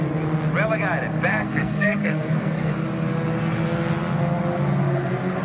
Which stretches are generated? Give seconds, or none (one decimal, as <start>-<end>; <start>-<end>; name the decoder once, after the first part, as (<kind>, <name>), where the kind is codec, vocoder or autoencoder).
1.3-2.7 (codec, SNAC)